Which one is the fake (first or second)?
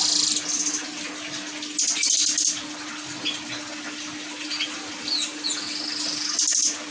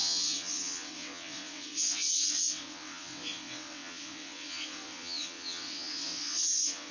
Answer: second